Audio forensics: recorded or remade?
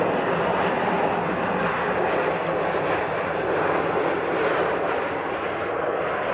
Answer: recorded